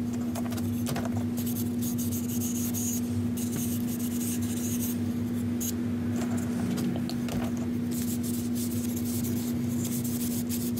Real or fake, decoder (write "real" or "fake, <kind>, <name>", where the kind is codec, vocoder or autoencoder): real